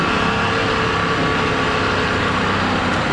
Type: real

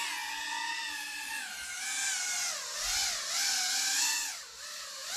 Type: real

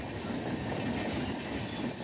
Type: real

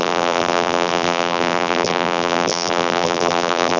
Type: fake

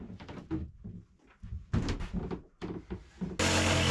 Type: real